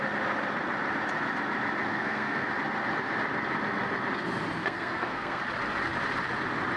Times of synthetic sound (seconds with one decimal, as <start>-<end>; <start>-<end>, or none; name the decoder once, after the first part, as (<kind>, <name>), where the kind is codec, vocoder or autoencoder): 1.9-2.5 (codec, SNAC); 4.6-5.4